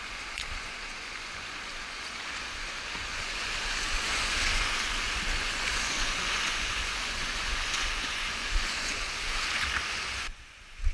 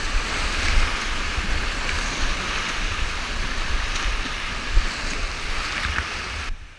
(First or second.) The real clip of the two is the second